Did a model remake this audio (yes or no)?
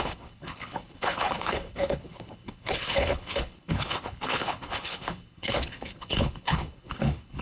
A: yes